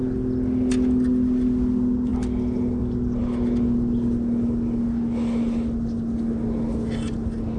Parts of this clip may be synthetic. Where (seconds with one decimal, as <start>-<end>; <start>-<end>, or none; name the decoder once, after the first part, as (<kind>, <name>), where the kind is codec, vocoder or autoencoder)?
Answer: none